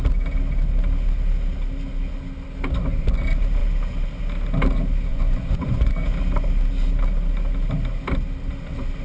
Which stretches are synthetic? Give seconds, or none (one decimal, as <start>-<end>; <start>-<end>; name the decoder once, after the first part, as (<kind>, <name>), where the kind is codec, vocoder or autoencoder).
5.1-5.9 (vocoder, Vocos)